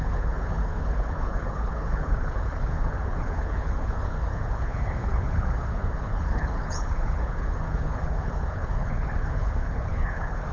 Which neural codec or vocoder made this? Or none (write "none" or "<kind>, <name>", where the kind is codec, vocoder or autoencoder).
codec, HILCodec